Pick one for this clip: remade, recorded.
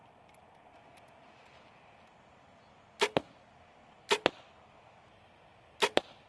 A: recorded